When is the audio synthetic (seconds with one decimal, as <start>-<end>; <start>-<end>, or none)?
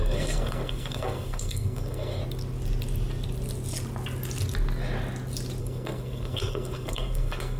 0.0-2.2; 5.6-7.6